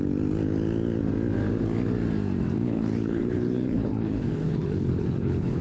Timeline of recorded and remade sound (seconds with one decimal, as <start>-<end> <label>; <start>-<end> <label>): 0.0-2.6 recorded; 2.6-5.6 remade